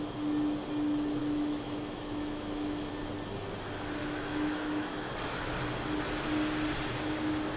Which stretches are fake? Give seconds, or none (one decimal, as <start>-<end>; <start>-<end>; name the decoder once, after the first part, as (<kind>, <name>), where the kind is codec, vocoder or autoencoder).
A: 1.2-2.9 (autoencoder, DAC-VAE); 4.0-5.1